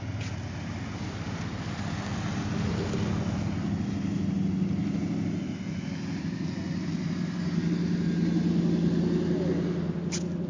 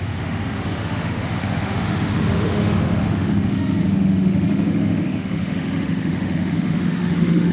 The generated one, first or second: second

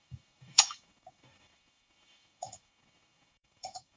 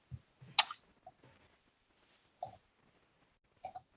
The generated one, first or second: first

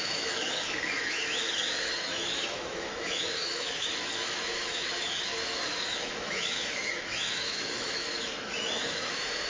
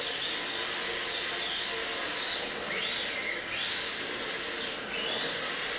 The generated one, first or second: first